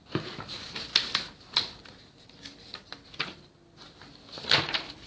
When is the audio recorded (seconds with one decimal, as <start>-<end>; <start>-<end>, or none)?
0.0-5.1